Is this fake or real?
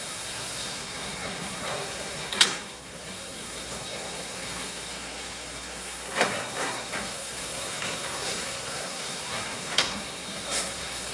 fake